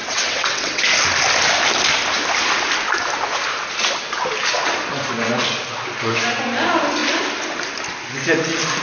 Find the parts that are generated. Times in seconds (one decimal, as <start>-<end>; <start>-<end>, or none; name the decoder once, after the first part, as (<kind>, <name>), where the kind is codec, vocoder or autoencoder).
0.0-0.8 (vocoder, WaveNeXt)

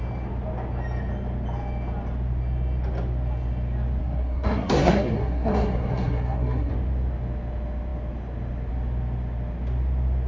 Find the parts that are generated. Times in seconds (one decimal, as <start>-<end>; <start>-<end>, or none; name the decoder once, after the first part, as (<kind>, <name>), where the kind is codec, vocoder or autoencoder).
4.0-6.7 (codec, SNAC)

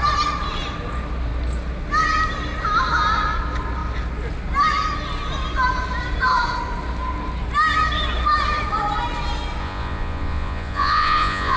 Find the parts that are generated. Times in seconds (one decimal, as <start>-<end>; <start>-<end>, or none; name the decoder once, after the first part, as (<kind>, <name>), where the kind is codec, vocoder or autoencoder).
9.6-11.6 (vocoder, Vocos)

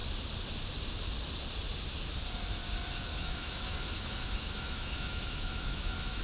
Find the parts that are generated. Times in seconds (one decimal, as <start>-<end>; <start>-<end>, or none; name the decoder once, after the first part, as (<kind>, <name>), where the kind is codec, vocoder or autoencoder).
3.1-6.2 (autoencoder, DAC-VAE)